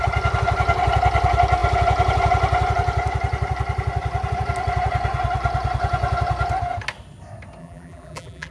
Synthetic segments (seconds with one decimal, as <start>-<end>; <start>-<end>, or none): 7.6-8.5